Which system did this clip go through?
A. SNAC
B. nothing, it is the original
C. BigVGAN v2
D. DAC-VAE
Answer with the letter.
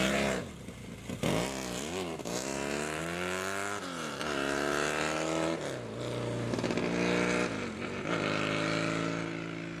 B